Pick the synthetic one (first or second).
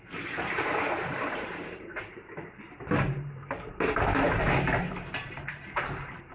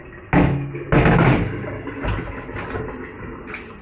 first